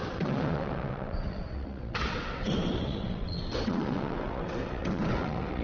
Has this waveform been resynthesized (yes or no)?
yes